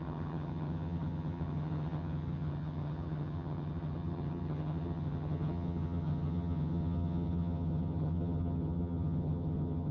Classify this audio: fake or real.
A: fake